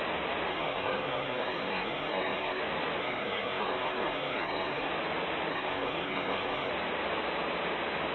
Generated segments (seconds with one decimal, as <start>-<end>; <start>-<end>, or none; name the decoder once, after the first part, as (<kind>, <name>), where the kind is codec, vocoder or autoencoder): 0.5-2.6 (codec, SNAC); 3.0-4.9; 5.5-6.7